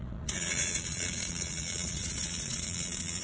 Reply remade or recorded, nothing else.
remade